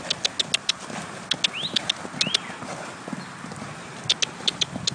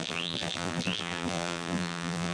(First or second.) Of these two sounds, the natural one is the first